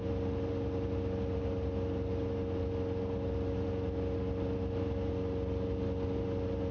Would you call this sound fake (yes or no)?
no